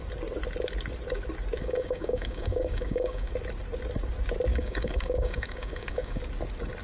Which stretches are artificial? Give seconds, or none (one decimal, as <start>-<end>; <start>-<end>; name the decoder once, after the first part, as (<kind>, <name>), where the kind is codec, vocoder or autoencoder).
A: 1.6-3.3 (codec, DAC); 4.5-6.2